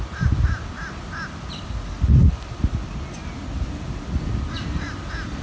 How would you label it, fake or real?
real